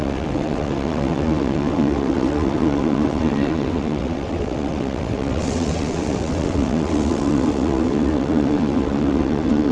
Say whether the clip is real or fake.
fake